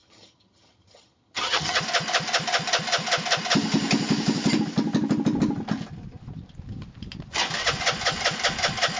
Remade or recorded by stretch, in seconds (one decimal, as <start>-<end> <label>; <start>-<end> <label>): 0.0-1.8 remade; 1.8-9.0 recorded